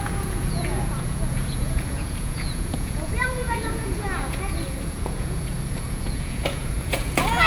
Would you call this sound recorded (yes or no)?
no